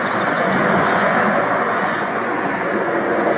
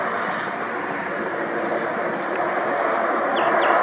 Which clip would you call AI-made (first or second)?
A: first